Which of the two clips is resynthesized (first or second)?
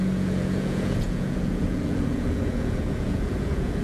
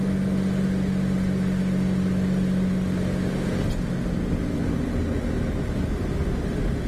first